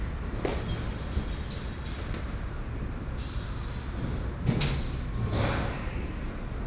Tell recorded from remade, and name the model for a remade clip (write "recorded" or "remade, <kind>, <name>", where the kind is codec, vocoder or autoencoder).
recorded